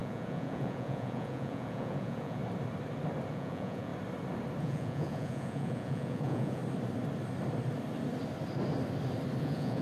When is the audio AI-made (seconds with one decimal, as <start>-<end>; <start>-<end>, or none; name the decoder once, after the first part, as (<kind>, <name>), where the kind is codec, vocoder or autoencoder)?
0.0-2.4 (vocoder, Vocos); 3.3-3.9; 4.6-6.6; 9.4-9.8